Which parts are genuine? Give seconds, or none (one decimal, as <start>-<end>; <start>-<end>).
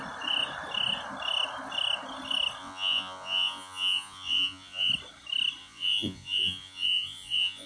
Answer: 0.0-2.6; 4.9-5.6